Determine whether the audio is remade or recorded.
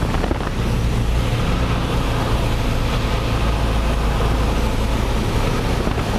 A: recorded